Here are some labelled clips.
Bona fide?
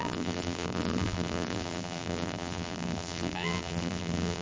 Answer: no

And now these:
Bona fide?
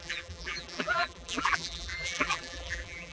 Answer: no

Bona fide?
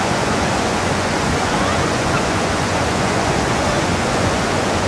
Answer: no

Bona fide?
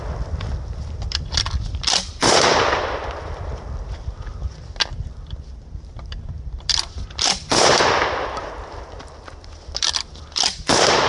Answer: no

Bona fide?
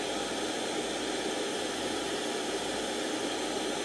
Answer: yes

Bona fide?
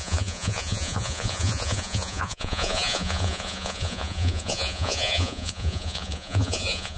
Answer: no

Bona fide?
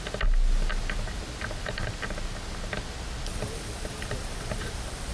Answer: yes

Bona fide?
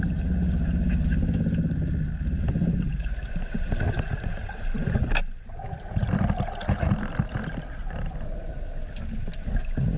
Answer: yes